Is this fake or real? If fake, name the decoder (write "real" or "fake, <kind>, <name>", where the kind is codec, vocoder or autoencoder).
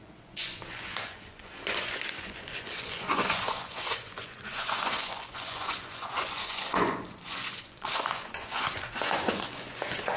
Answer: fake, vocoder, Vocos